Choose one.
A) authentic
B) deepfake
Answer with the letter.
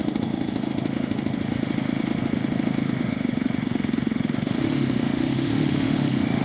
B